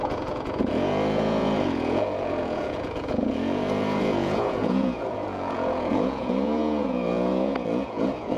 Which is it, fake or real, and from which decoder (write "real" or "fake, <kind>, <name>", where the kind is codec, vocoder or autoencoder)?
fake, vocoder, Vocos